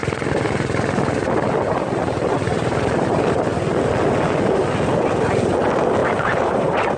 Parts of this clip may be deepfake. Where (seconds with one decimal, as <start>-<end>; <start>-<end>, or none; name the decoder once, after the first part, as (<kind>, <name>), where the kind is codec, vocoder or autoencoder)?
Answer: 6.0-7.0 (vocoder, BigVGAN v2)